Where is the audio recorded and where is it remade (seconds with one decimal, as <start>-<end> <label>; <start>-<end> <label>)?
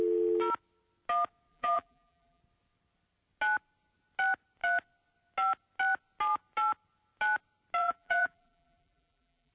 0.0-1.5 recorded; 1.5-2.4 remade; 2.4-7.8 recorded; 7.8-9.5 remade